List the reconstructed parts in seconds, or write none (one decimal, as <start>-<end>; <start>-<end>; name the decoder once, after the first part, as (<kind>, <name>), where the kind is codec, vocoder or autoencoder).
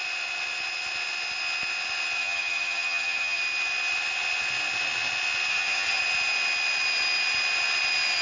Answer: 2.2-3.4 (vocoder, HiFi-GAN); 5.5-6.0